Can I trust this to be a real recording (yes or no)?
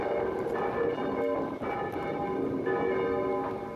yes